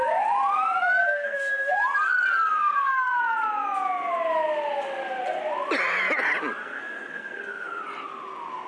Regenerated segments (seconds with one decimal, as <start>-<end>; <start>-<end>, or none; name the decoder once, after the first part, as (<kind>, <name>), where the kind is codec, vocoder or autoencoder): 1.0-1.8 (codec, SNAC); 2.5-3.2; 6.6-7.8